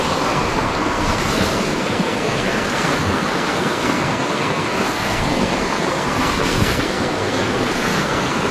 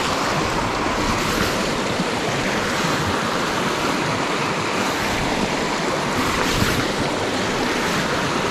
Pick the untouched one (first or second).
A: second